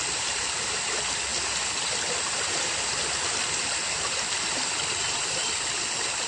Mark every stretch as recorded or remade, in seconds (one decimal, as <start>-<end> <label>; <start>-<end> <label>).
0.0-1.3 remade; 1.3-2.1 recorded; 2.1-6.3 remade